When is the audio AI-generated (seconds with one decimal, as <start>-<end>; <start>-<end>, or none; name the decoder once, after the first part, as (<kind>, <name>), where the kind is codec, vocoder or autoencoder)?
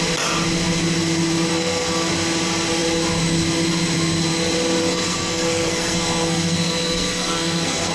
1.5-2.1 (codec, SNAC); 4.8-7.9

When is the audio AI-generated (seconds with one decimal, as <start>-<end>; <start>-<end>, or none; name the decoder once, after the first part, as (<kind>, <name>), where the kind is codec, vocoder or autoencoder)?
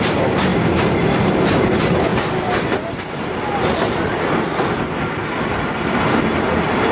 0.5-1.6 (vocoder, BigVGAN v2); 2.1-6.2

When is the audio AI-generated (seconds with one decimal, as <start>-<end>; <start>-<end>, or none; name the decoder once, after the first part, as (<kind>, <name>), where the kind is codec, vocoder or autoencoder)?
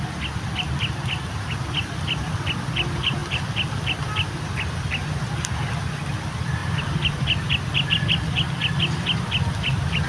6.6-7.5 (vocoder, BigVGAN v2)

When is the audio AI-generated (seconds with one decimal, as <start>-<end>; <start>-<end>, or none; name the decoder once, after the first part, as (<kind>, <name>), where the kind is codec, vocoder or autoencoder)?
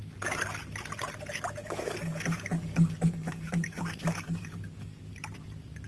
1.6-5.1 (codec, DAC)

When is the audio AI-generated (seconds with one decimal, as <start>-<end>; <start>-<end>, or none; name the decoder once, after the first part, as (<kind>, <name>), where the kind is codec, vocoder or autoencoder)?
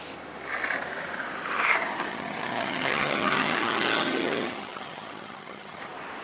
2.1-5.8 (vocoder, HiFi-GAN)